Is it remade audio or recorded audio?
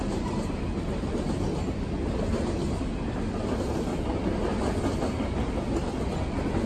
recorded